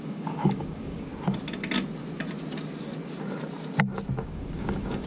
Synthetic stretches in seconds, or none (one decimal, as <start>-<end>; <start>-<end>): 0.0-1.1; 4.2-5.1